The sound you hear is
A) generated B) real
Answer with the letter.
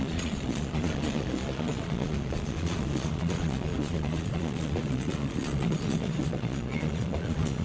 A